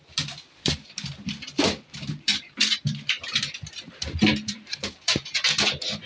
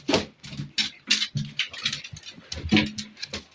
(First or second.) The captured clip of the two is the second